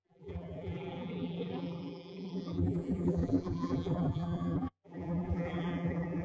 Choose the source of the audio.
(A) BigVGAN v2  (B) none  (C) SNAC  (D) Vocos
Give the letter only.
A